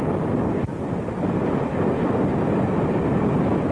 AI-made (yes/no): no